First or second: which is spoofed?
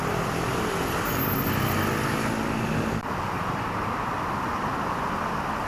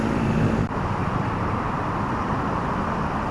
second